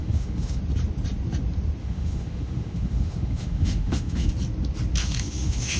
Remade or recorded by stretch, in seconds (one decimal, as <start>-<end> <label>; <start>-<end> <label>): 0.0-0.6 remade; 0.6-1.8 recorded; 1.8-4.3 remade; 4.3-5.0 recorded; 5.0-5.8 remade